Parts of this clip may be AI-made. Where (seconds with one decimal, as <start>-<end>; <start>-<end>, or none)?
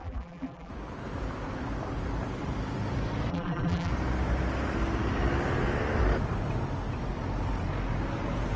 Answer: 0.0-0.7; 3.3-3.9